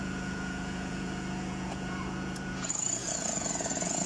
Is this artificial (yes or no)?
yes